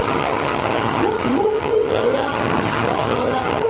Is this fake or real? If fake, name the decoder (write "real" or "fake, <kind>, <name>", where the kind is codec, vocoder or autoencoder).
fake, vocoder, HiFi-GAN